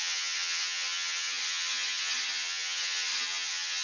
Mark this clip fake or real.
fake